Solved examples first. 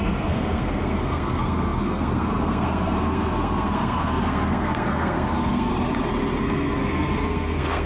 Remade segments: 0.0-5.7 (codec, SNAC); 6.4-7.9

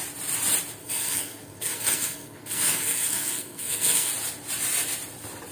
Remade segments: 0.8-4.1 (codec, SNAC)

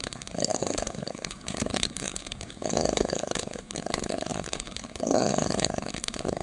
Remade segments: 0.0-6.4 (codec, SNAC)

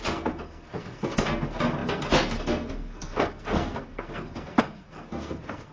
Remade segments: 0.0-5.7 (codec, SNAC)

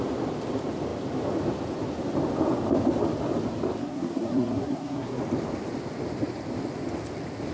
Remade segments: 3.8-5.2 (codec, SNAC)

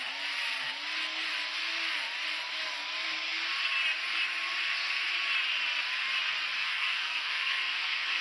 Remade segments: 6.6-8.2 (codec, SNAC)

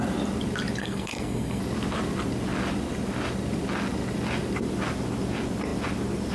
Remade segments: 0.8-1.6 (codec, SNAC)